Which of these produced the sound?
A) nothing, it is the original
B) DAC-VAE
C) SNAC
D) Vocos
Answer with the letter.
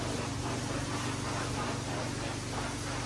A